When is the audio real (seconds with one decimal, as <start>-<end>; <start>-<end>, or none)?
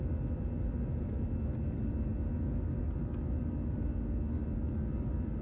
0.0-5.4